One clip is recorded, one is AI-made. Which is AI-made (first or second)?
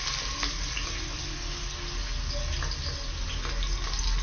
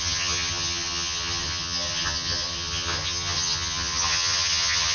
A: second